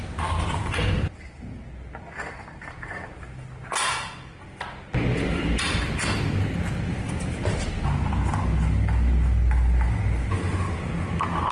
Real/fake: real